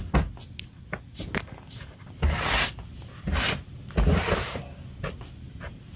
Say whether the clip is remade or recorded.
recorded